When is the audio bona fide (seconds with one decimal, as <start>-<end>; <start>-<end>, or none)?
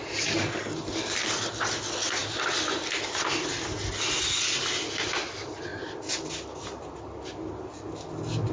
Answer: 0.0-2.2; 2.9-5.7; 6.9-8.5